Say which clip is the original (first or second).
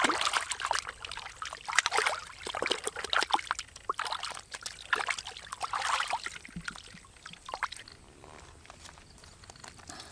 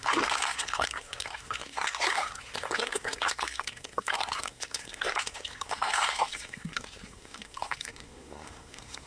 first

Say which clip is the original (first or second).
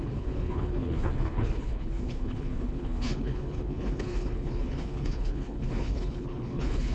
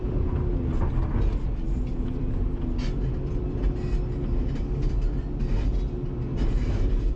second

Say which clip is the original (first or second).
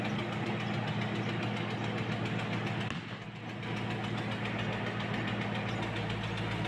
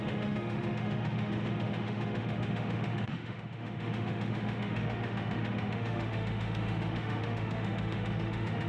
first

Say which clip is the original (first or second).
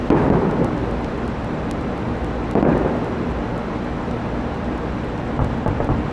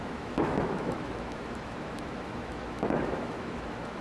first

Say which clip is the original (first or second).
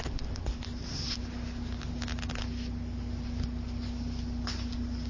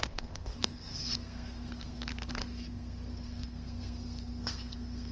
first